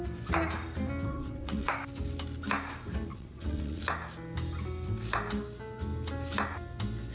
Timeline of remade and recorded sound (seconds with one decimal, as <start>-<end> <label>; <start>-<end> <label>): 0.0-1.1 recorded; 1.1-1.7 remade; 1.7-3.1 recorded; 3.1-3.8 remade; 3.8-7.1 recorded